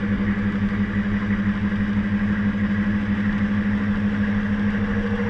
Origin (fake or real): real